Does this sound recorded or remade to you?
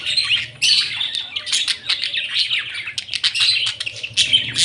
recorded